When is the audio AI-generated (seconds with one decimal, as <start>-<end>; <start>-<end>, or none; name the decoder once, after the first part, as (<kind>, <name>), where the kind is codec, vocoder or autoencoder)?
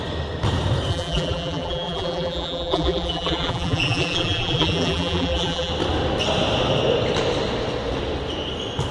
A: 0.9-5.7 (vocoder, BigVGAN v2)